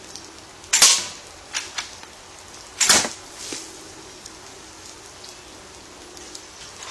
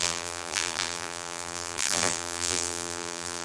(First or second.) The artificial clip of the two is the second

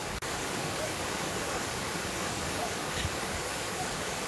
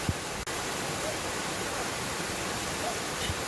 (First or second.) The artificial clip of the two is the first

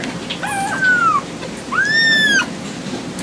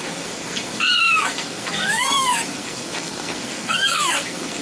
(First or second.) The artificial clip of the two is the second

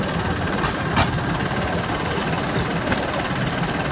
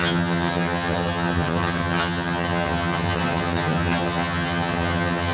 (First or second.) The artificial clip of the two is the second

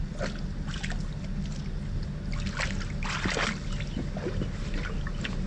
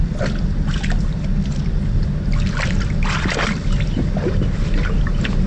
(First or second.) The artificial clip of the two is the second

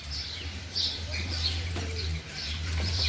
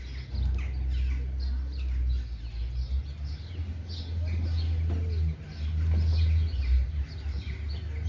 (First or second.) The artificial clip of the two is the first